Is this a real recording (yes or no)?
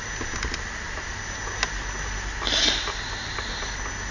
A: yes